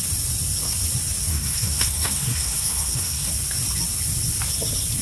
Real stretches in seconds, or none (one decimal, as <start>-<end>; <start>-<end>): 0.0-1.3; 3.3-5.0